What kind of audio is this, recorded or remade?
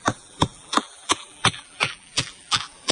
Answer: remade